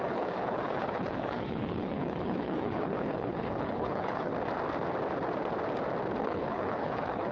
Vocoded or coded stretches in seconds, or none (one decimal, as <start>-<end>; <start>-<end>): 0.0-4.3; 6.2-7.3

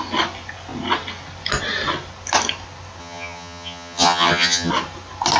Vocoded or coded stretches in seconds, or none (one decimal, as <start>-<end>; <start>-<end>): 3.0-4.7

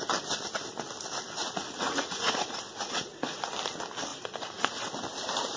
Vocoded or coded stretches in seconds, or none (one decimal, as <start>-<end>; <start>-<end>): 1.4-3.5

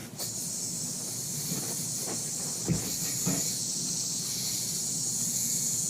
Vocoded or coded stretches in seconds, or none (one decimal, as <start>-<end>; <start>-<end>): 3.5-5.9

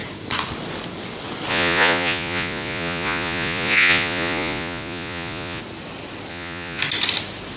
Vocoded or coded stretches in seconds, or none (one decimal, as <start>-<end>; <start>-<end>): 1.5-5.6; 6.3-6.8